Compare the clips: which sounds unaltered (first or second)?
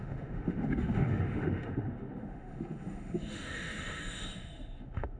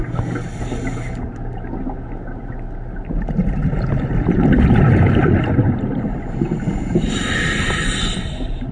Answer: second